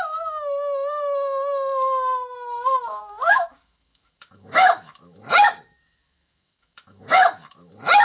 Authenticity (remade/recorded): remade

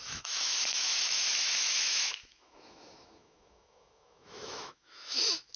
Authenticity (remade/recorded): remade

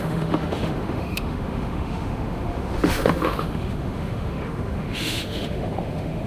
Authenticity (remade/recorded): remade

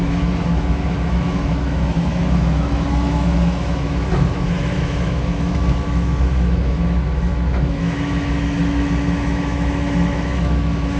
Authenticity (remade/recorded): remade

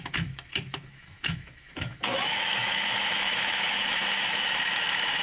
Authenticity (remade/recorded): remade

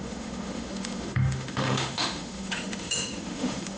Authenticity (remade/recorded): remade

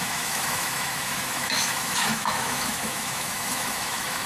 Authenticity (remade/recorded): remade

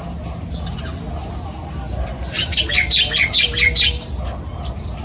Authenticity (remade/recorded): recorded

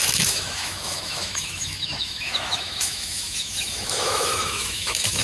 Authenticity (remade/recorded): remade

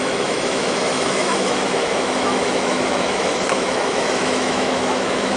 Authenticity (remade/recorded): remade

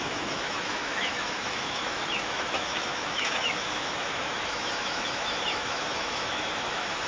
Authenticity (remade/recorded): remade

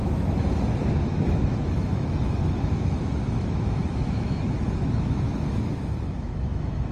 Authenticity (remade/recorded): remade